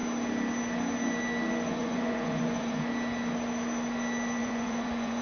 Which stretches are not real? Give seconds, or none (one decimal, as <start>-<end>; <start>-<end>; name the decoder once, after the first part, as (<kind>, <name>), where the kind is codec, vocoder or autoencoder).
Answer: 1.7-2.8 (vocoder, Vocos); 4.4-5.2